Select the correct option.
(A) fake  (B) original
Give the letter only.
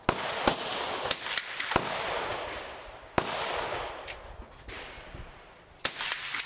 B